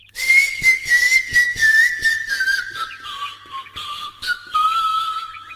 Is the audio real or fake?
fake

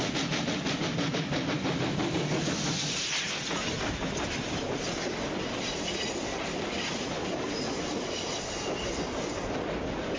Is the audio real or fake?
real